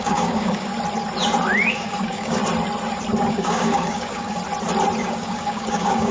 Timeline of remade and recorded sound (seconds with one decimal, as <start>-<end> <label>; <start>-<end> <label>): 0.0-0.7 remade; 0.7-1.7 recorded; 1.7-2.4 remade; 2.4-3.3 recorded; 3.3-4.4 remade; 4.4-5.0 recorded; 5.0-6.1 remade